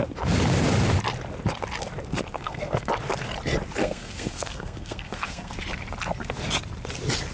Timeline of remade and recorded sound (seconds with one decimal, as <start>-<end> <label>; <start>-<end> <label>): 0.0-2.3 recorded; 2.3-2.9 remade; 2.9-3.8 recorded; 3.8-5.5 remade; 5.5-7.3 recorded

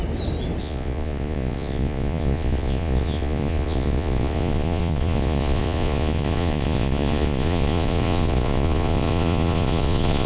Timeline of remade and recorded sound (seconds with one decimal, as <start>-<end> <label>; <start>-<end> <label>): 0.0-0.6 recorded; 0.6-10.3 remade

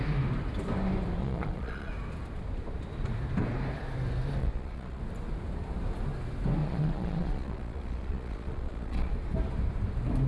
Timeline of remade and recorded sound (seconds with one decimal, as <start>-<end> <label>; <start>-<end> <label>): 0.0-1.2 recorded; 1.2-1.9 remade; 1.9-4.4 recorded; 4.4-5.0 remade; 5.0-6.6 recorded; 6.6-9.1 remade; 9.1-10.3 recorded

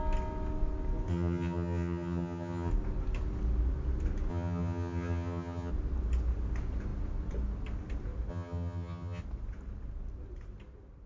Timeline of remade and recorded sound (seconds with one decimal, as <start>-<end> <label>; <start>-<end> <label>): 0.0-1.1 recorded; 1.1-2.7 remade; 2.7-4.3 recorded; 4.3-5.7 remade; 5.7-8.3 recorded; 8.3-9.2 remade; 9.2-11.1 recorded